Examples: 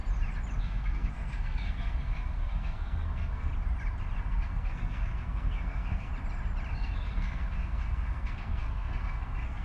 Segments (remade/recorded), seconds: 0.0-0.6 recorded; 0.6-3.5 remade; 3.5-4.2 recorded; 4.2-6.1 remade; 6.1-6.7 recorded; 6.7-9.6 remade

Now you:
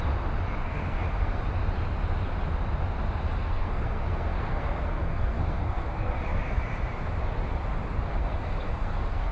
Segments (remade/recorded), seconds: 0.0-0.6 recorded; 0.6-1.4 remade; 1.4-3.4 recorded; 3.4-6.6 remade; 6.6-8.1 recorded; 8.1-9.3 remade

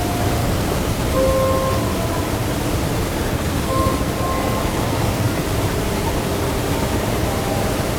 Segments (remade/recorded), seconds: 0.0-0.4 recorded; 0.4-1.0 remade; 1.0-3.0 recorded; 3.0-4.1 remade; 4.1-4.7 recorded; 4.7-5.4 remade; 5.4-8.0 recorded

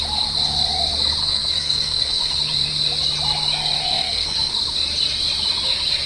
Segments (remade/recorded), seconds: 0.0-1.2 recorded; 1.2-2.4 remade; 2.4-3.9 recorded; 3.9-4.5 remade; 4.5-6.1 recorded

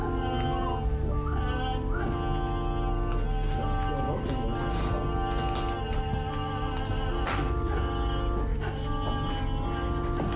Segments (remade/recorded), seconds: 0.0-10.4 recorded

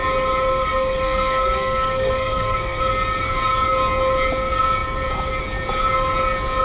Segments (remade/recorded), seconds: 0.0-0.5 recorded; 0.5-2.8 remade; 2.8-6.6 recorded

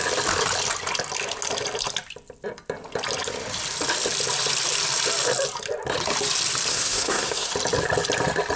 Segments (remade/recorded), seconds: 0.0-6.7 recorded; 6.7-7.5 remade; 7.5-8.6 recorded